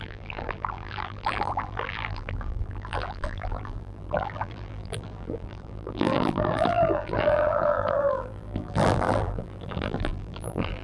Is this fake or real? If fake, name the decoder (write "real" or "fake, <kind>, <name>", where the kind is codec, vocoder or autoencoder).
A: fake, vocoder, BigVGAN v2